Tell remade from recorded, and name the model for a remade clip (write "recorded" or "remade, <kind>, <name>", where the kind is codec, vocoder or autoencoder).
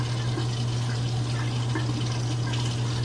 recorded